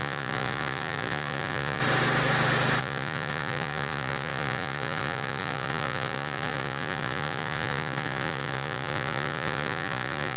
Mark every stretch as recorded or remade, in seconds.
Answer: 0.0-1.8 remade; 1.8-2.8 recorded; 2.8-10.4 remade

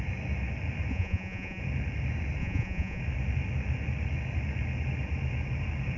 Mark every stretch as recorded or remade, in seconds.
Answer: 0.0-0.9 recorded; 0.9-1.6 remade; 1.6-2.4 recorded; 2.4-3.0 remade; 3.0-6.0 recorded

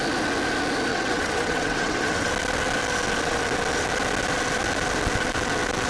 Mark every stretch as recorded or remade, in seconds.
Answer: 0.0-0.9 recorded; 0.9-2.3 remade; 2.3-5.9 recorded

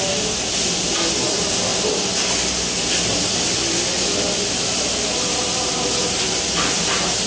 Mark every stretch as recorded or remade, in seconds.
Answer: 0.0-7.3 recorded

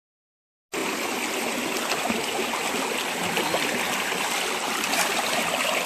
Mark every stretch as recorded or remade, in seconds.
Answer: 0.0-5.9 recorded